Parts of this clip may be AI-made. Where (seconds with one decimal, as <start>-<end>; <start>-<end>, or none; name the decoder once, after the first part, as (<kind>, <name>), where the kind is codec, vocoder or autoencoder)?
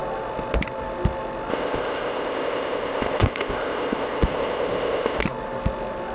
1.5-5.2 (codec, ZipCodec)